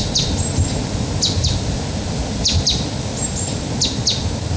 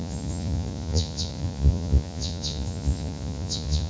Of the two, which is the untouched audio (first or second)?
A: first